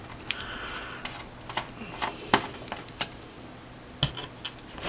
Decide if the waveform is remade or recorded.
recorded